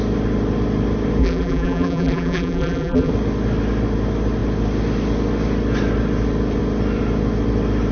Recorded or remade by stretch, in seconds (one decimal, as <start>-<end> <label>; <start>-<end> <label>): 0.0-1.2 recorded; 1.2-3.1 remade; 3.1-7.9 recorded